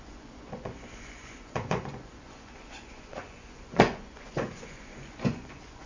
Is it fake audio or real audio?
fake